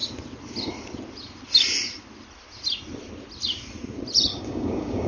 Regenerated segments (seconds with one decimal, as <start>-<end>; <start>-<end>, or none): 4.3-5.1